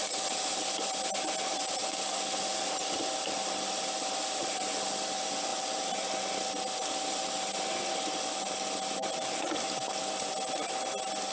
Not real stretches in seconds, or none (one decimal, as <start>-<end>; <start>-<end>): none